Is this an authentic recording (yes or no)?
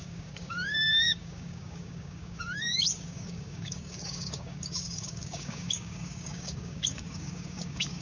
no